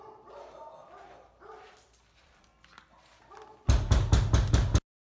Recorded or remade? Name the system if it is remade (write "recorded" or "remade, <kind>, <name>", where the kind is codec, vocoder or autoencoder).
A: recorded